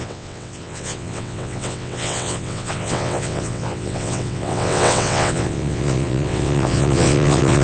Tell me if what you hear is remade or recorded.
remade